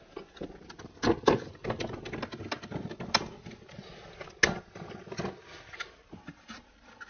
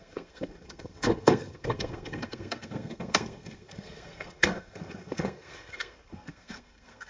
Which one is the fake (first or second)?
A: second